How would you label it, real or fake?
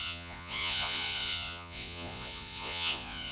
fake